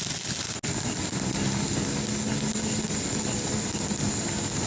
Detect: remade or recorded recorded